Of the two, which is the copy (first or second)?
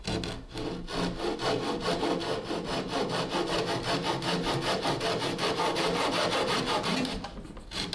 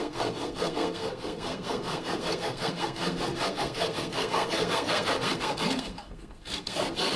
second